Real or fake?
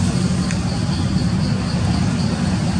real